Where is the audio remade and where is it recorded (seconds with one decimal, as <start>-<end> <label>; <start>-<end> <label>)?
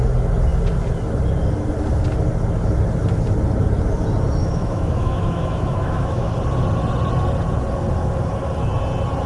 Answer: 0.0-4.4 recorded; 4.4-6.3 remade; 6.3-9.3 recorded